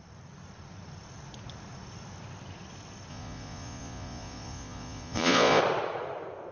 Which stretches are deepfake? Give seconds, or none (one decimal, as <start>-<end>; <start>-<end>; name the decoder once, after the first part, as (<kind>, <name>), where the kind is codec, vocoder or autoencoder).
3.1-5.6 (vocoder, Vocos)